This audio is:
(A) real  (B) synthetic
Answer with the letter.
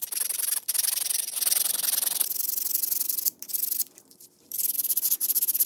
B